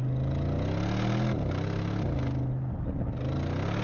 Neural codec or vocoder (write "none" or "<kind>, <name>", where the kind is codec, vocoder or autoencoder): none